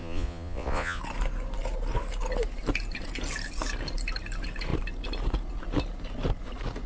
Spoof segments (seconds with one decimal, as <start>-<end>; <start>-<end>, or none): 0.0-1.0